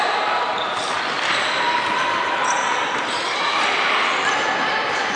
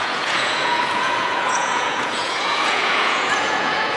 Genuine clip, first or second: first